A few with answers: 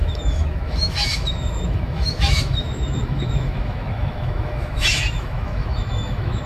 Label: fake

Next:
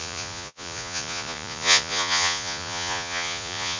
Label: fake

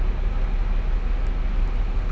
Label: real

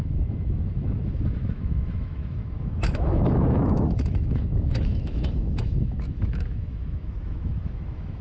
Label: fake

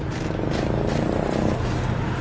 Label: real